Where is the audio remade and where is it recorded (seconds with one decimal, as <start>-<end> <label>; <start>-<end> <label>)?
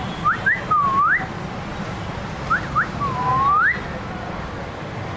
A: 0.0-5.2 recorded